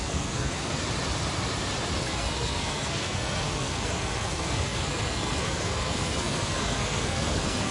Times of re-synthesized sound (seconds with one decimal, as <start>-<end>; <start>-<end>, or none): 0.0-0.8; 2.0-7.7